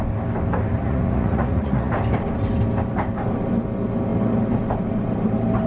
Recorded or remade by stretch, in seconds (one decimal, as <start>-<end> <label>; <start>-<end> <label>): 0.0-0.8 recorded; 0.8-1.9 remade; 1.9-5.7 recorded